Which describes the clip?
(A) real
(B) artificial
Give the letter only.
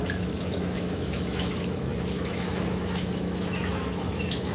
B